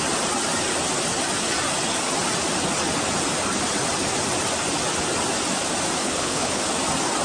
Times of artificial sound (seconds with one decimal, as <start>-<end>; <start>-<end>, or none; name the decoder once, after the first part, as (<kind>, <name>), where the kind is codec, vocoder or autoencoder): 6.0-6.6 (codec, HILCodec)